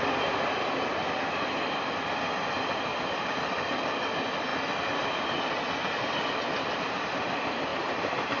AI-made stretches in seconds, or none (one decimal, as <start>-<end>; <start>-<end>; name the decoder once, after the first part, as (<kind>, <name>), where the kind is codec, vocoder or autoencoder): 7.7-8.4 (vocoder, BigVGAN v2)